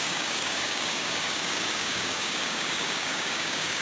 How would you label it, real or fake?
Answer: fake